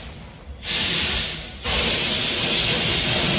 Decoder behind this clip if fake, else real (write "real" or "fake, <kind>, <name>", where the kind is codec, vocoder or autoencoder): real